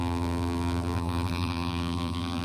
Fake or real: fake